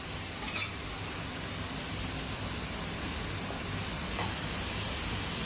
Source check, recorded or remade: remade